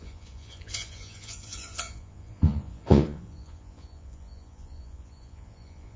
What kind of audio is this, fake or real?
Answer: fake